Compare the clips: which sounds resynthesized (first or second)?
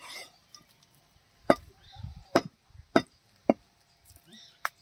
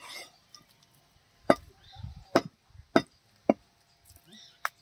first